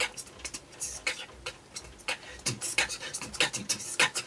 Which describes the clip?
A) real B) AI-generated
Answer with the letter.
A